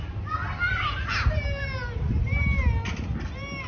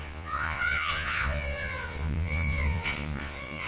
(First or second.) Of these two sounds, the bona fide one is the first